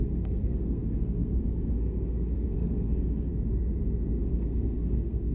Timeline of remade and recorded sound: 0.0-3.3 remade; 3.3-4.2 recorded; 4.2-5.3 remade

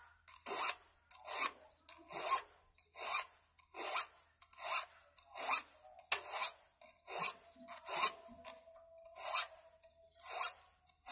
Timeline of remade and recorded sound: 0.0-11.1 recorded

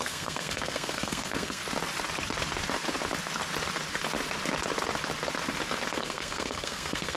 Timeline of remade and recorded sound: 0.0-1.6 remade; 1.6-5.9 recorded; 5.9-7.2 remade

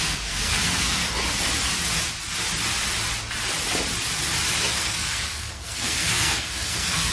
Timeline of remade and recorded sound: 0.0-1.0 remade; 1.0-4.6 recorded; 4.6-7.1 remade

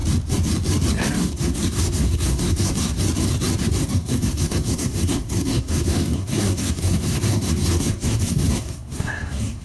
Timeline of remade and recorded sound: 0.0-1.1 recorded; 1.1-2.9 remade; 2.9-3.6 recorded; 3.6-9.6 remade

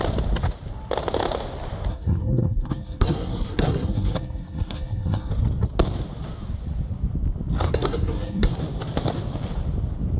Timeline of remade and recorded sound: 0.0-1.9 recorded; 1.9-5.3 remade; 5.3-7.7 recorded; 7.7-8.6 remade; 8.6-10.2 recorded